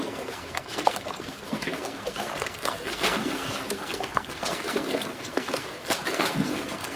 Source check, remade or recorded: remade